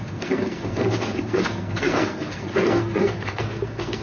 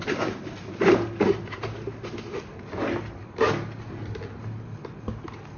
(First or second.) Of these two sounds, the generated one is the first